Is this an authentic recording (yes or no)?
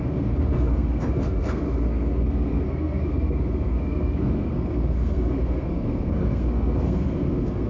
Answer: no